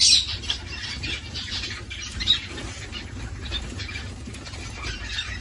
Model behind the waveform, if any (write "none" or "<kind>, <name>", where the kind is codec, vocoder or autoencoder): vocoder, BigVGAN v2